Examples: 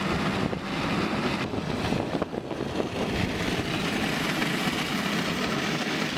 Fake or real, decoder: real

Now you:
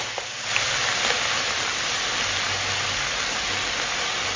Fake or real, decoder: real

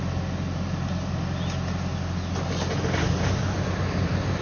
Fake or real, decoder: real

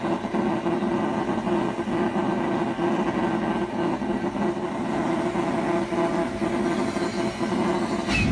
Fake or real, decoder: real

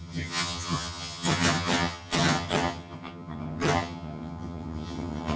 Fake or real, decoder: fake, vocoder, HiFi-GAN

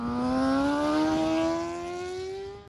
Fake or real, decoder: real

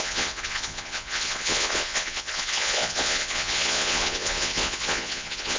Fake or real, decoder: fake, vocoder, Vocos